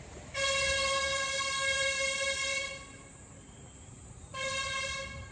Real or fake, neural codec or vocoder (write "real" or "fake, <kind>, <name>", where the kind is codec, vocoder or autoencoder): real